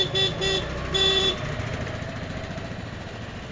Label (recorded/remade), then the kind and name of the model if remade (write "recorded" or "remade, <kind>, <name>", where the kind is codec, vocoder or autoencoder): recorded